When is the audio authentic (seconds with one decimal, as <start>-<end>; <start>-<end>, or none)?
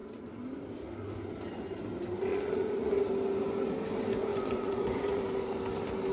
0.0-2.3; 2.9-4.3; 5.2-6.1